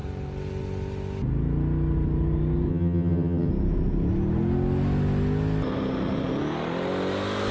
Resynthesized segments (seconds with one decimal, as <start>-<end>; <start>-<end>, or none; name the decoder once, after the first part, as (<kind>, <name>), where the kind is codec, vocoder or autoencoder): 2.7-3.5 (vocoder, HiFi-GAN)